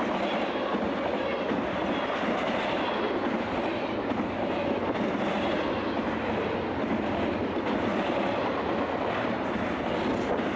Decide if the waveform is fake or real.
real